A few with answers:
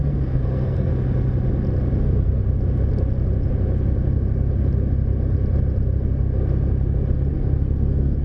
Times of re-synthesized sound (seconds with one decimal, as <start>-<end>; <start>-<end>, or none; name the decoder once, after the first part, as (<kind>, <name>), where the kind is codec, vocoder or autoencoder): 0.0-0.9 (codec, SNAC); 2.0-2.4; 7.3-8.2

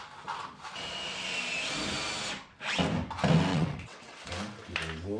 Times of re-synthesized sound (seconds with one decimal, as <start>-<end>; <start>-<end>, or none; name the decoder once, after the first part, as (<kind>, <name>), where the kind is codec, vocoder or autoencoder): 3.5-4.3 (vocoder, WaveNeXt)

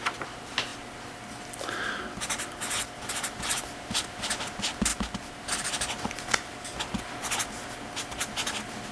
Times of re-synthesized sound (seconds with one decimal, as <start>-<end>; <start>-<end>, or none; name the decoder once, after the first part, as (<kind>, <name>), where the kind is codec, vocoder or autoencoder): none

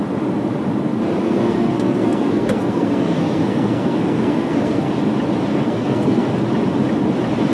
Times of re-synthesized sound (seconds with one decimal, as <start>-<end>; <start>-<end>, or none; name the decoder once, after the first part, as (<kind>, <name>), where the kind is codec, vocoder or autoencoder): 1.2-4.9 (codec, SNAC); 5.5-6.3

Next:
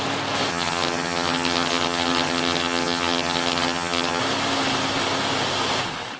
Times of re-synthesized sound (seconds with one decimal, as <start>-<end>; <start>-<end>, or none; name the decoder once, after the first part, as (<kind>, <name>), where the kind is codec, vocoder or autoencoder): 0.5-4.2 (vocoder, HiFi-GAN)

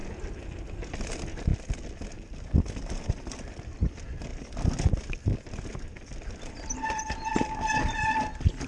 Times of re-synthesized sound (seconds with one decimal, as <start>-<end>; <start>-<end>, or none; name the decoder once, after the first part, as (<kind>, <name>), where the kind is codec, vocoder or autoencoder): none